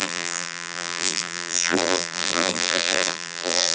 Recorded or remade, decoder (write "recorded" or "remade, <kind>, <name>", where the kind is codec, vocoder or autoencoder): remade, vocoder, BigVGAN v2